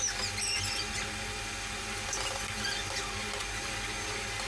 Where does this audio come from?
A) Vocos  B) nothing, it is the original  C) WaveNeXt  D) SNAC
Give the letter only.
B